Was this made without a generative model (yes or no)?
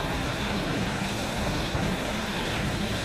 no